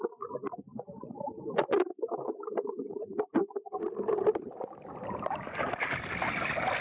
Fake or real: real